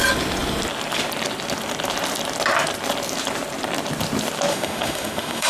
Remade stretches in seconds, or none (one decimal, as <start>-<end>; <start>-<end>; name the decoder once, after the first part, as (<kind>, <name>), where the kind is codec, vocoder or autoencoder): 4.5-5.5 (autoencoder, DAC-VAE)